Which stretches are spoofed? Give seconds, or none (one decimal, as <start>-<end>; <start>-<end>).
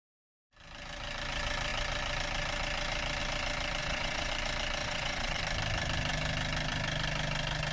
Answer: 3.8-4.3; 4.8-5.4